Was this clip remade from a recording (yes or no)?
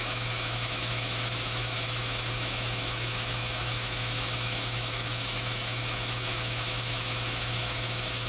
yes